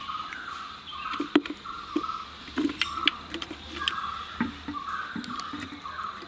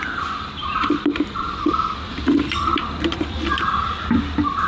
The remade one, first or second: second